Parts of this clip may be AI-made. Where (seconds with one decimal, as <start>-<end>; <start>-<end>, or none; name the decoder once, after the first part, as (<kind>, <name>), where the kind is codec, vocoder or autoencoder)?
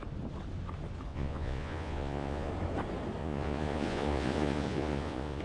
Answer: 1.1-2.5 (vocoder, Vocos); 3.2-5.4